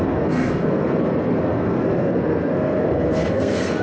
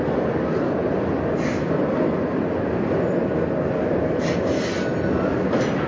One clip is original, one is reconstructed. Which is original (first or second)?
second